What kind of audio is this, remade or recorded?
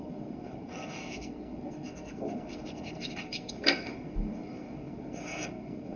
remade